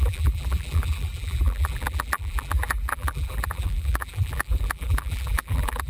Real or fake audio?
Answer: fake